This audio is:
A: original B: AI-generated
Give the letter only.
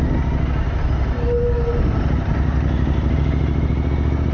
A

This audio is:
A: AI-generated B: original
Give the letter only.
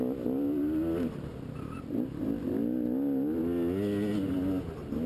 B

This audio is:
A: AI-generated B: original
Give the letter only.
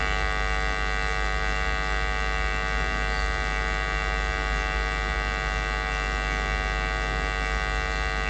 B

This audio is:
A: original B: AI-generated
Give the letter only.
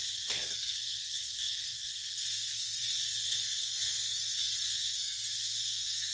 B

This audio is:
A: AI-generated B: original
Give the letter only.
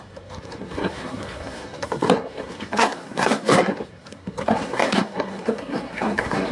A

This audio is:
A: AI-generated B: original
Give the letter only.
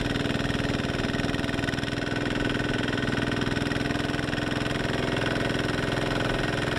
B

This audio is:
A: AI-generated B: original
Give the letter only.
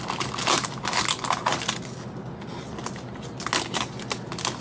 B